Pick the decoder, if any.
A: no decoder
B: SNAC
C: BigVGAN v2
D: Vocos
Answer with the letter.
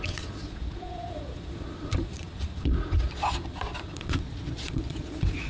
D